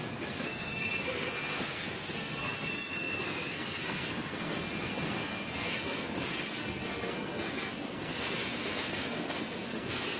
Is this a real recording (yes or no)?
no